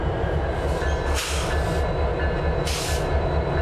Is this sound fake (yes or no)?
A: no